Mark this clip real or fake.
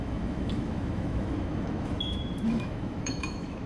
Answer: fake